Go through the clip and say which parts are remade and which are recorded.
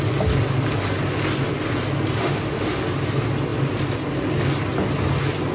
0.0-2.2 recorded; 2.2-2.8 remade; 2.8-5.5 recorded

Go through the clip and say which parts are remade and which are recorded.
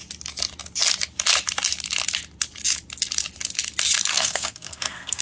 0.0-4.1 recorded; 4.1-5.2 remade